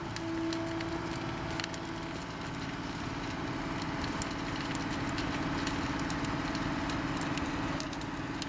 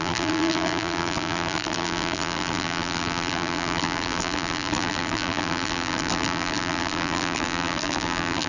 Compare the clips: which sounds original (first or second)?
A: first